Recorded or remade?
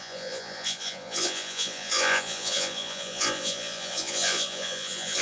remade